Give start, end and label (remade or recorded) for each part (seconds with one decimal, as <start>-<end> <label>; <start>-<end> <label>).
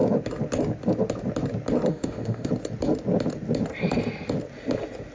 0.0-1.9 recorded; 1.9-2.5 remade; 2.5-5.1 recorded